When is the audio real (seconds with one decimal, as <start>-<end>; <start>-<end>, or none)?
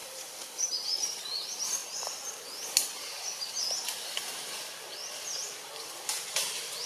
0.7-6.9